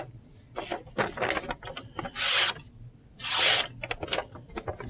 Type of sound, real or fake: real